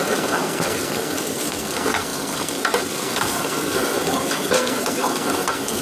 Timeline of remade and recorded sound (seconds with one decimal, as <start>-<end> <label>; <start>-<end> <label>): 0.0-5.8 remade